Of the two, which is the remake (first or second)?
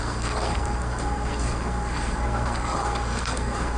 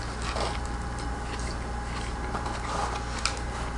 first